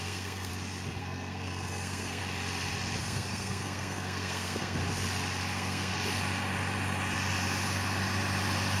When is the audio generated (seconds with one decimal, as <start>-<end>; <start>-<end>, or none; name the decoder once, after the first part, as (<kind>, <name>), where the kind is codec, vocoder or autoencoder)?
0.0-0.5 (codec, SNAC); 1.0-2.2; 3.0-4.8; 5.5-5.9